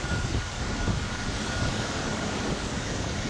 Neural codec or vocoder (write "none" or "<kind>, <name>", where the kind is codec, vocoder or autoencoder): codec, DAC